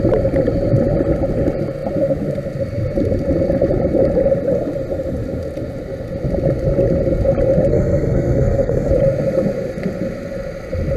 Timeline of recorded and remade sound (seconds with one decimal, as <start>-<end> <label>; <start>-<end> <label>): 0.0-7.7 recorded; 7.7-8.9 remade; 8.9-11.0 recorded